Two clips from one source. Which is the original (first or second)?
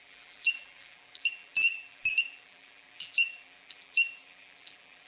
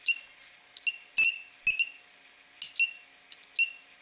second